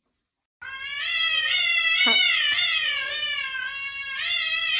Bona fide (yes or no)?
yes